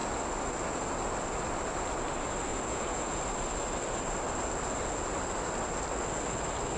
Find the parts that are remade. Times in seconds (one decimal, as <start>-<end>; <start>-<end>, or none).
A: 2.5-3.2